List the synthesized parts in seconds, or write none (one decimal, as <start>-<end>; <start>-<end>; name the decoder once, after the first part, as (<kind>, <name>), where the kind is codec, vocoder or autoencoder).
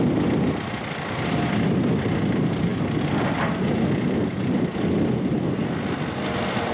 none